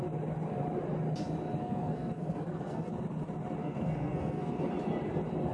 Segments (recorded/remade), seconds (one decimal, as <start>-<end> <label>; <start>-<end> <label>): 0.0-1.6 recorded; 1.6-2.9 remade; 2.9-3.6 recorded; 3.6-4.7 remade; 4.7-5.5 recorded